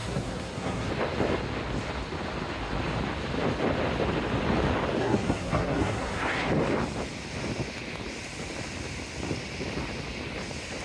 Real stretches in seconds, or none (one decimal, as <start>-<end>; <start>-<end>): 0.9-5.0; 6.5-10.8